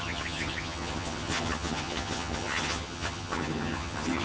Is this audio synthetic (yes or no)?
yes